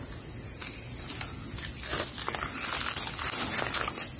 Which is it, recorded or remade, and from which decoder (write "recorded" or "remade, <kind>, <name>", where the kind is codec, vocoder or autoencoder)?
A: recorded